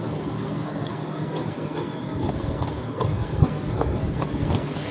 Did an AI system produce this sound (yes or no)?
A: yes